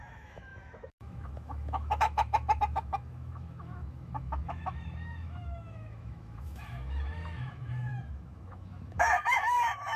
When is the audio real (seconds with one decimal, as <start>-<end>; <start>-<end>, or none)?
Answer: none

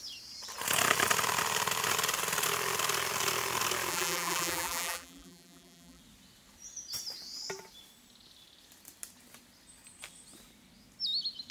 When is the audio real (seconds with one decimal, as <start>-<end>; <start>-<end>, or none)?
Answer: 0.0-3.9; 6.0-11.5